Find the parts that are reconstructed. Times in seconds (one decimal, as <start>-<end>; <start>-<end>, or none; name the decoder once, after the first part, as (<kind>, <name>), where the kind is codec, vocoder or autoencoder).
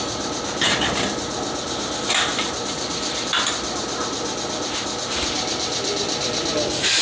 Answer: 2.3-6.5 (vocoder, BigVGAN v2)